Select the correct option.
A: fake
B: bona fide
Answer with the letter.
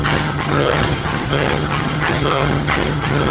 A